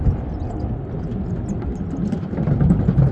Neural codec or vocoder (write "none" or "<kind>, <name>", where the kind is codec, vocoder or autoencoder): none